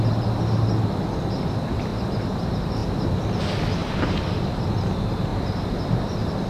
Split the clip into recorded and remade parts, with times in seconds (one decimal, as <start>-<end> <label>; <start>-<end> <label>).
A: 0.0-1.9 recorded; 1.9-2.4 remade; 2.4-3.8 recorded; 3.8-4.6 remade; 4.6-6.5 recorded